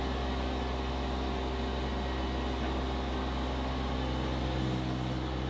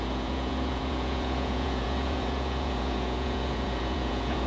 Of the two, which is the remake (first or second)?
second